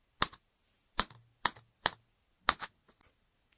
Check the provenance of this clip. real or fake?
real